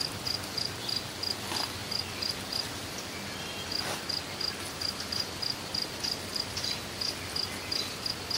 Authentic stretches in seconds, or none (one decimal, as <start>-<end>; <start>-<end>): 0.0-8.4